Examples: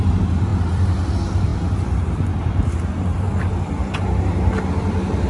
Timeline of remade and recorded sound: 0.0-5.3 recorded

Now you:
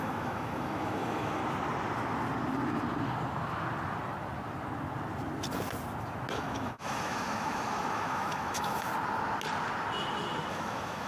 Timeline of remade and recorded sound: 0.0-1.4 remade; 1.4-6.3 recorded; 6.3-8.9 remade; 8.9-10.5 recorded; 10.5-11.1 remade

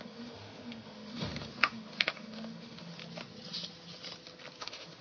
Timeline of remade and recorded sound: 0.0-3.0 remade; 3.0-4.6 recorded; 4.6-5.0 remade

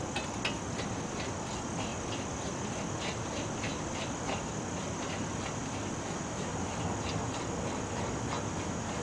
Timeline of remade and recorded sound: 0.0-9.0 recorded

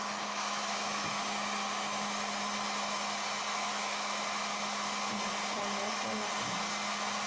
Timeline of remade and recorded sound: 0.0-1.2 remade; 1.2-3.5 recorded; 3.5-4.2 remade; 4.2-7.3 recorded